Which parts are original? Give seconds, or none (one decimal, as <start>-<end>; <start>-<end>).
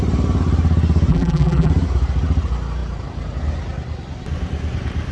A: 0.0-1.1; 1.7-5.1